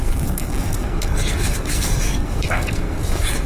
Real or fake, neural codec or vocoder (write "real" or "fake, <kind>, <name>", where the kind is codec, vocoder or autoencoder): fake, codec, SNAC